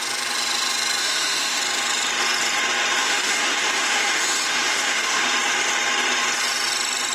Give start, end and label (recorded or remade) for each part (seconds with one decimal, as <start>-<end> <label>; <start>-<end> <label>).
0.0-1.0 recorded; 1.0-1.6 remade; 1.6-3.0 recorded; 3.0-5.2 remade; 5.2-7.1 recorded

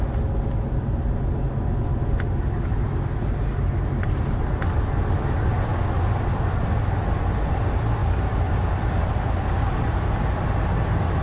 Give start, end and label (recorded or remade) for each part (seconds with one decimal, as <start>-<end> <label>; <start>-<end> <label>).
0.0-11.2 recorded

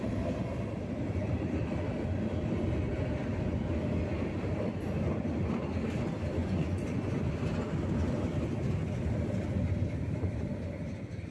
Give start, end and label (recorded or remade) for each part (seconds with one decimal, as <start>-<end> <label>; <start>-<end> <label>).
0.0-6.4 recorded; 6.4-7.2 remade; 7.2-11.3 recorded

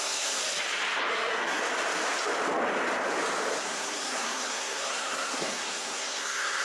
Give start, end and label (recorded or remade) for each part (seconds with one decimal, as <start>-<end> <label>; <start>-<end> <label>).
0.0-0.4 remade; 0.4-1.1 recorded; 1.1-1.6 remade; 1.6-3.6 recorded; 3.6-6.6 remade